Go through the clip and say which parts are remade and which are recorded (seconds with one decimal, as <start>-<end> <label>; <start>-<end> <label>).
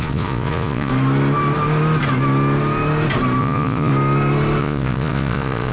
0.0-0.9 remade; 0.9-3.4 recorded; 3.4-3.9 remade; 3.9-4.6 recorded; 4.6-5.7 remade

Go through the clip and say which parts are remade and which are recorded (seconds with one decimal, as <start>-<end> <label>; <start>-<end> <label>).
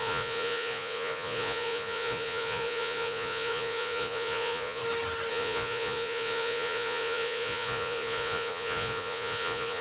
0.0-4.8 remade; 4.8-5.3 recorded; 5.3-9.8 remade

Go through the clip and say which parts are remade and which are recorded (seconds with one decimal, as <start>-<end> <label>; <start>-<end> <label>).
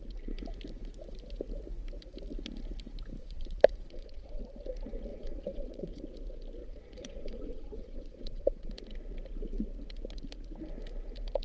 0.0-3.2 recorded; 3.2-4.4 remade; 4.4-5.1 recorded; 5.1-6.0 remade; 6.0-6.6 recorded; 6.6-8.7 remade; 8.7-11.4 recorded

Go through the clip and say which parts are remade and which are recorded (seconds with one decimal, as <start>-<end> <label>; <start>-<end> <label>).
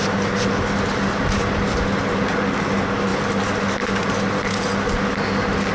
0.0-5.7 recorded